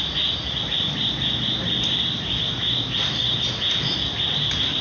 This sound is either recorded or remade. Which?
recorded